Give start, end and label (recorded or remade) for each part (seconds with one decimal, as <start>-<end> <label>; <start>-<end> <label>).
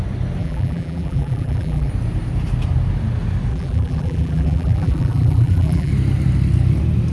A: 0.0-0.4 recorded; 0.4-1.9 remade; 1.9-3.5 recorded; 3.5-5.9 remade; 5.9-7.1 recorded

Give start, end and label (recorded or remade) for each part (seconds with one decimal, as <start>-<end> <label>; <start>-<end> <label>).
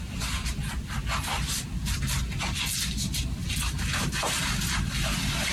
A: 0.0-3.4 recorded; 3.4-4.9 remade; 4.9-5.5 recorded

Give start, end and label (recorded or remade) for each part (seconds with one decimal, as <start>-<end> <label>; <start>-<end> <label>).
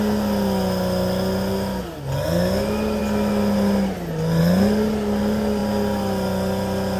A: 0.0-7.0 recorded